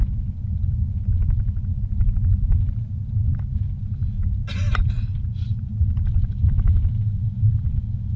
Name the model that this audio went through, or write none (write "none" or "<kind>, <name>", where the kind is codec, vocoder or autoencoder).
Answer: none